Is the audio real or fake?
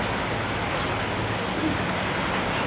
real